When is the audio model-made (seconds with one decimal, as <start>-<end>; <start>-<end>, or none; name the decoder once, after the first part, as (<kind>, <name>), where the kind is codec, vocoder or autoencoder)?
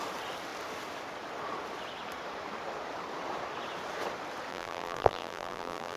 4.5-6.0 (vocoder, BigVGAN v2)